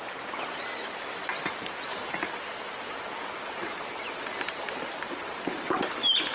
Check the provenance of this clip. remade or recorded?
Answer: recorded